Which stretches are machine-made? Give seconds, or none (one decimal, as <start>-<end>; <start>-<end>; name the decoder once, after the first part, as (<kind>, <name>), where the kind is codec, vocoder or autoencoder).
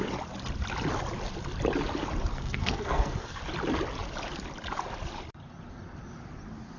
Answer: 2.3-3.4 (codec, SNAC)